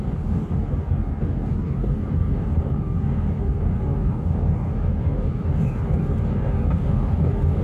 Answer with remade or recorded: remade